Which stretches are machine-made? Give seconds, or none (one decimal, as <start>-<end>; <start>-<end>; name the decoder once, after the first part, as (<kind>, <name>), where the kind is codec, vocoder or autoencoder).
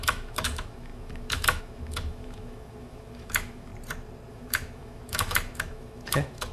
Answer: 0.0-3.7 (autoencoder, DAC-VAE); 4.3-6.5